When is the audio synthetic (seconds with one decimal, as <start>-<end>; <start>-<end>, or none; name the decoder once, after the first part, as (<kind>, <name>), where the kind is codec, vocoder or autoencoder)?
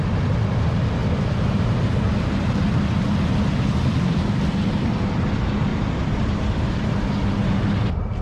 1.0-1.8 (vocoder, BigVGAN v2); 5.7-7.6